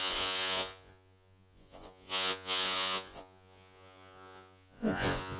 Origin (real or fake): fake